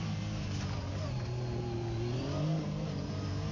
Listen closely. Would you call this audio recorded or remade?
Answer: recorded